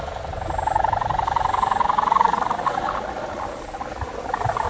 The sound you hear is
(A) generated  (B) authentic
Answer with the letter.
B